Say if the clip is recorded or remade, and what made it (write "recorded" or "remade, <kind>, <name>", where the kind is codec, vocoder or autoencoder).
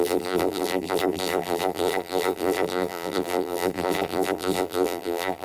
remade, vocoder, BigVGAN v2